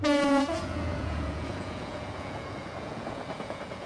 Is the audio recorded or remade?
remade